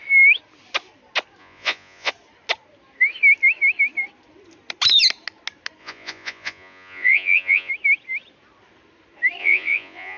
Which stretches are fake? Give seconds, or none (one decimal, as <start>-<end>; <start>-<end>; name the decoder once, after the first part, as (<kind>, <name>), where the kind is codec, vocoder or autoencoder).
1.4-2.1 (vocoder, Vocos); 5.8-7.7; 9.4-10.2